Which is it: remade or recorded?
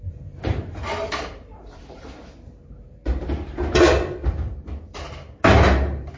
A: remade